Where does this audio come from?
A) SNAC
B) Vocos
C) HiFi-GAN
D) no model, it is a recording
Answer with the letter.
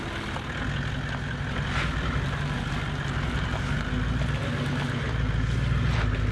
D